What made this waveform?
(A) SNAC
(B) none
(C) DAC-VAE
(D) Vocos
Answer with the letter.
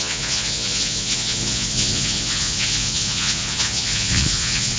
D